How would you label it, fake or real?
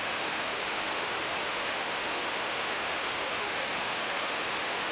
fake